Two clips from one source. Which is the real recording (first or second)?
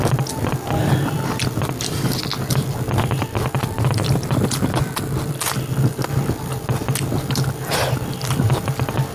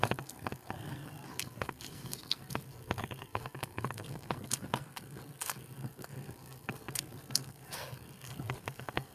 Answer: first